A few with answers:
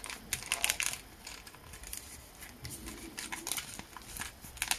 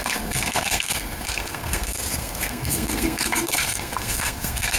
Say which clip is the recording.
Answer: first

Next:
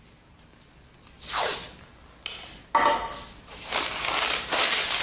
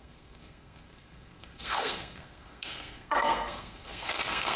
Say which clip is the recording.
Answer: first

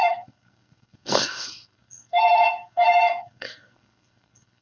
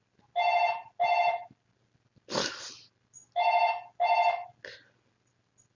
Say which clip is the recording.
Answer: second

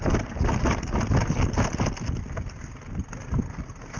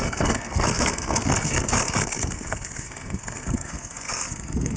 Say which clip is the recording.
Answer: first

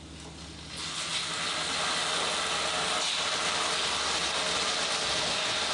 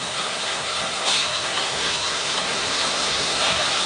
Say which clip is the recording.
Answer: first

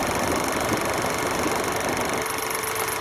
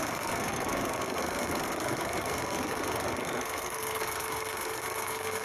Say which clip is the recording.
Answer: first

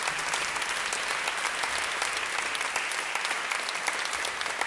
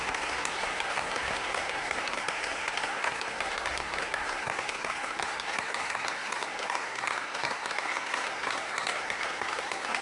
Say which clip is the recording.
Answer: first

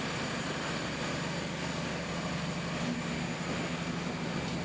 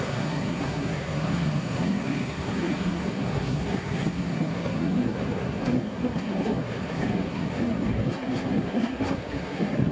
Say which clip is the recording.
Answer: first